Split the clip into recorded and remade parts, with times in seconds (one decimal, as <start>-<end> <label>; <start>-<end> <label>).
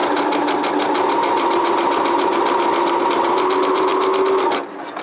0.0-5.0 recorded